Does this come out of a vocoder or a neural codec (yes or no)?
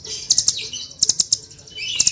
no